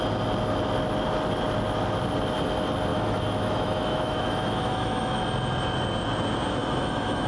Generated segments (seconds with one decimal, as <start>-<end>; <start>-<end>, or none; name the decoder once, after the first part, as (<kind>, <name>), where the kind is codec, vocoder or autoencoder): 2.9-5.2 (autoencoder, DAC-VAE); 6.6-7.3